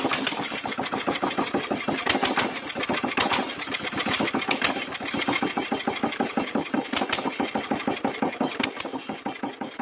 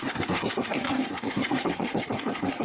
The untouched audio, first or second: first